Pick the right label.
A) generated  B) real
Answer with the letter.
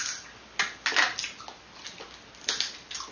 B